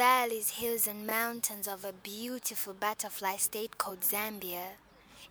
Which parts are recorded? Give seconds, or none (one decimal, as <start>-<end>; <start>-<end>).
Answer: 0.0-1.1; 3.9-5.3